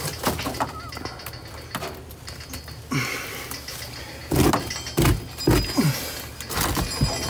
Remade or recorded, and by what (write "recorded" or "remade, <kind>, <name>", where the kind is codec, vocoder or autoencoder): recorded